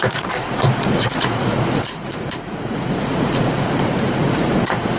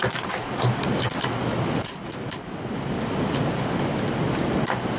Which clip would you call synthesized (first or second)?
first